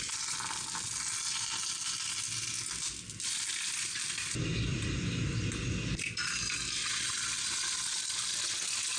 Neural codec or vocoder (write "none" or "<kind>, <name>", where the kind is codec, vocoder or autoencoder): none